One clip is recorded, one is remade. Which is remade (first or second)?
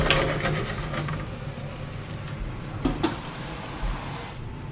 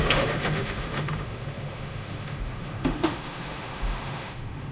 second